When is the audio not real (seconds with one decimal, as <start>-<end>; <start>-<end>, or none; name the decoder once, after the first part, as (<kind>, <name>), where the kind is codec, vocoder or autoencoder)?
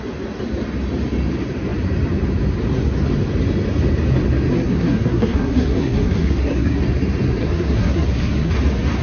4.5-6.8 (codec, SNAC); 7.4-8.5